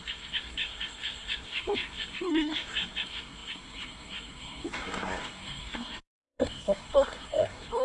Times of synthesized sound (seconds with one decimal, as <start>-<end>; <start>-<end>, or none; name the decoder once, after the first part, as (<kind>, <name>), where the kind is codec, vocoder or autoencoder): 0.0-7.8 (codec, SNAC)